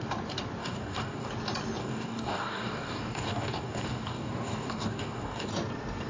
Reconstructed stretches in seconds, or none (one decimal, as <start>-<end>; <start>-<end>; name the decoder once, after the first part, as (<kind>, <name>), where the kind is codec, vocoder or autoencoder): 0.6-1.3 (codec, DAC); 1.8-5.5